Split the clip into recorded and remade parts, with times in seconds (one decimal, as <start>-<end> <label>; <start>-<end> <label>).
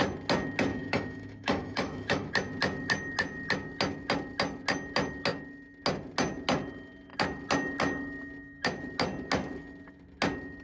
0.0-0.7 recorded; 0.7-2.3 remade; 2.3-10.6 recorded